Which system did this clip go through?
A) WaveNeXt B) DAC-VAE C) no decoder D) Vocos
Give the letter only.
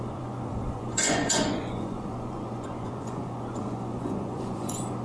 D